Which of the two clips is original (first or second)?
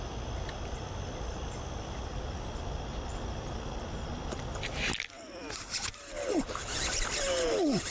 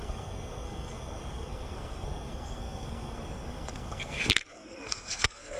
first